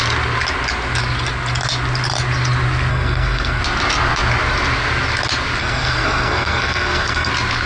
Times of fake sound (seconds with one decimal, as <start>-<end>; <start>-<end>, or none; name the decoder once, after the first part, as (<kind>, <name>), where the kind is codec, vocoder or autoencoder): 2.9-3.6 (codec, SNAC); 5.6-7.3

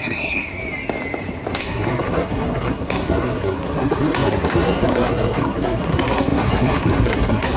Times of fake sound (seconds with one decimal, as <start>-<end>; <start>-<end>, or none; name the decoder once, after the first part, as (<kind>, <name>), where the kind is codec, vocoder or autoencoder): 0.0-0.6 (codec, SNAC); 1.6-7.6

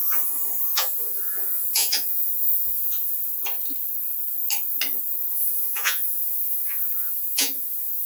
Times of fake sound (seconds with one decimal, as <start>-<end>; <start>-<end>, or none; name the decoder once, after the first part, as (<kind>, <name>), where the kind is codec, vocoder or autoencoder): 0.0-3.3 (vocoder, Vocos); 5.3-8.1

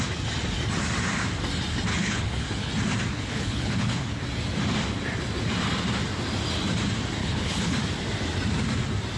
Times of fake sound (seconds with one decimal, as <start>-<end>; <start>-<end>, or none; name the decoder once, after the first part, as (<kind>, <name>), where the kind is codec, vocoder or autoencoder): 1.9-2.7 (codec, HILCodec); 3.1-4.2; 7.2-7.8

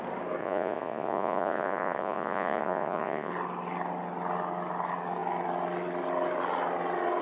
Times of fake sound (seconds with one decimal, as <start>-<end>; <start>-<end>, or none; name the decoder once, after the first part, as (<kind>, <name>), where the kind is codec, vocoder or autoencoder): 0.4-3.3 (vocoder, Vocos)

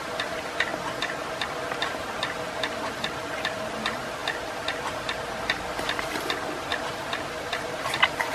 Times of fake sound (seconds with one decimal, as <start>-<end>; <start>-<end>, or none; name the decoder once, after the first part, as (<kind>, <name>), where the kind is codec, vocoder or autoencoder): 0.0-0.7 (vocoder, BigVGAN v2); 1.3-4.2; 5.8-8.3